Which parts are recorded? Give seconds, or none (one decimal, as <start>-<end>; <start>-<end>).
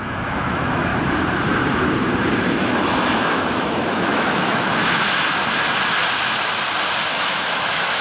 0.9-2.6; 4.8-7.1